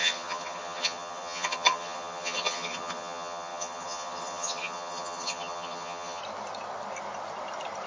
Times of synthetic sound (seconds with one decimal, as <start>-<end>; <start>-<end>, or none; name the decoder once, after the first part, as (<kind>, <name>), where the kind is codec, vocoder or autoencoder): 0.0-6.2 (vocoder, HiFi-GAN)